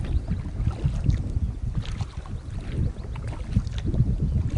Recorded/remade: recorded